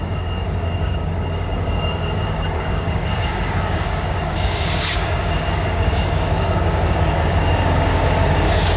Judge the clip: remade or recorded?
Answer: remade